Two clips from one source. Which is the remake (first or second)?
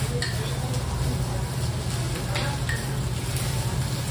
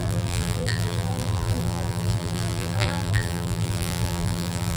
second